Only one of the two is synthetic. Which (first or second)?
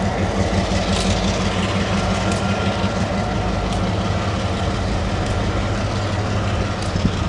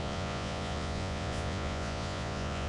second